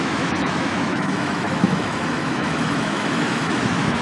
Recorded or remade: remade